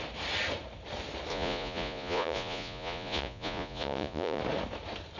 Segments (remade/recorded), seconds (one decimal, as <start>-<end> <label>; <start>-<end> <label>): 0.0-1.3 recorded; 1.3-4.4 remade; 4.4-5.2 recorded